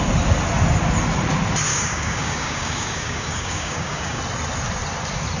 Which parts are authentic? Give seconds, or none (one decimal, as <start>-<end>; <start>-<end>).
0.0-1.7; 4.2-5.4